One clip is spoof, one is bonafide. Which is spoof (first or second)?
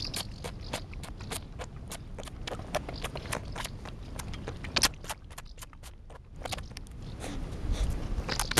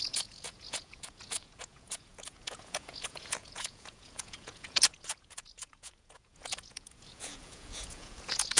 second